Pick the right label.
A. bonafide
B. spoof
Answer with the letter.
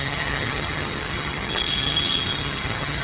B